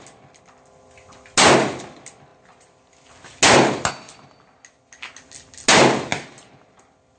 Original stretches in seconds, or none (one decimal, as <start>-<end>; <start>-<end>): 0.0-6.1; 6.8-7.2